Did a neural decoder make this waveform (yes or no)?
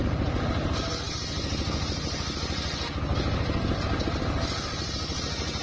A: no